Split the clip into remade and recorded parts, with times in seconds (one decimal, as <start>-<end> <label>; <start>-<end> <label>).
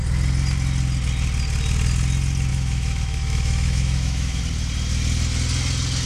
0.0-2.5 recorded; 2.5-4.4 remade; 4.4-6.1 recorded